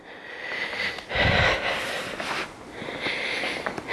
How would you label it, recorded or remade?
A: recorded